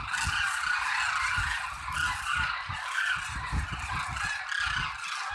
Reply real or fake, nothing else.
real